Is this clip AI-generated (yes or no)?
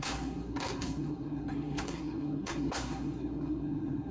yes